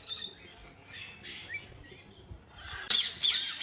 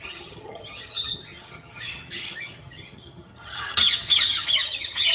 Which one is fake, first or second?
second